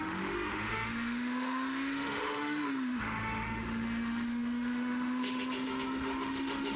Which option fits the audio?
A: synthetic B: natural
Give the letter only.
A